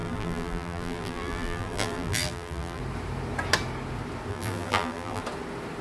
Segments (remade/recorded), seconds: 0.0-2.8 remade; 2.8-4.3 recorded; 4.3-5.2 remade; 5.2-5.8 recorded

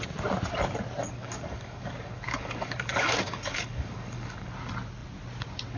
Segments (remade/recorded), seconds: 0.0-1.0 recorded; 1.0-4.5 remade; 4.5-5.8 recorded